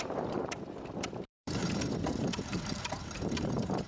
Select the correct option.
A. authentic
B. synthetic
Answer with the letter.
B